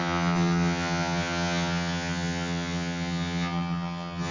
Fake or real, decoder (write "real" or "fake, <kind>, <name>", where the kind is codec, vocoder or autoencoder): fake, vocoder, HiFi-GAN